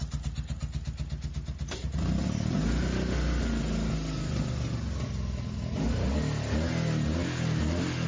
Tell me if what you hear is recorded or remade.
recorded